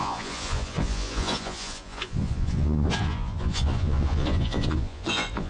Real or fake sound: fake